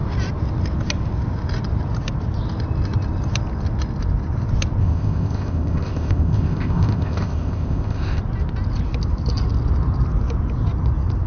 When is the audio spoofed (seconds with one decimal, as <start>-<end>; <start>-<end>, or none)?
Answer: 4.8-8.2